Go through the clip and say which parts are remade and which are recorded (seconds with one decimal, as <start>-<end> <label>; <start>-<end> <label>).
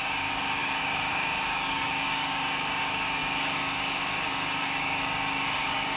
0.0-6.0 remade